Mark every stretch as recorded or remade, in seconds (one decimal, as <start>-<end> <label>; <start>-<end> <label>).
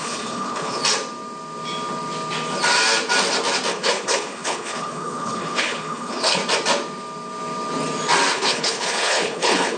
0.0-0.8 remade; 0.8-3.7 recorded; 3.7-6.4 remade; 6.4-8.3 recorded; 8.3-9.8 remade